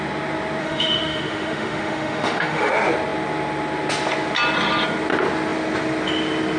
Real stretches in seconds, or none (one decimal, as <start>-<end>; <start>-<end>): 0.0-0.6; 2.7-6.6